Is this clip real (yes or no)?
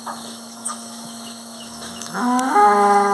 no